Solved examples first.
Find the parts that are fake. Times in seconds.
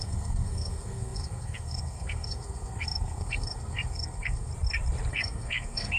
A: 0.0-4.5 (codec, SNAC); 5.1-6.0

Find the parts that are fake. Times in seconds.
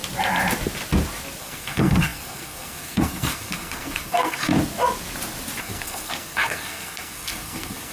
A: 1.4-4.5 (codec, SNAC); 5.6-7.9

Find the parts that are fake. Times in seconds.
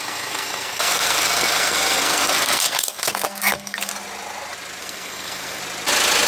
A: 0.0-3.9 (codec, SNAC); 4.8-5.6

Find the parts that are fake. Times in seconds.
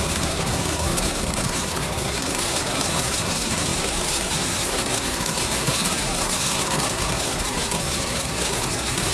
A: 0.0-9.1 (codec, SNAC)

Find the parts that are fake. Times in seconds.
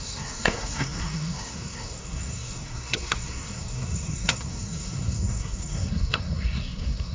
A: 0.0-7.1 (codec, SNAC)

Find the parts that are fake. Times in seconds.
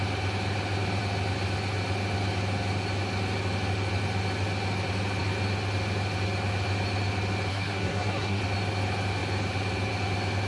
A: 7.5-8.4 (codec, SNAC)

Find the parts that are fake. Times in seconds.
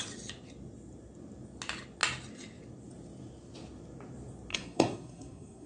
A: 4.5-5.7 (codec, SNAC)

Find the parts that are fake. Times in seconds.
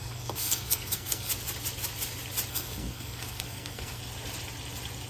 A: 0.0-1.3 (codec, SNAC); 2.5-4.0